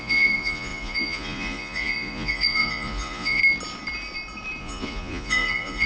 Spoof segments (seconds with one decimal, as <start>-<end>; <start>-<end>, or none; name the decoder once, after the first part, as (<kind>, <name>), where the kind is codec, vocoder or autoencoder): 0.0-3.4 (vocoder, Vocos); 4.6-5.9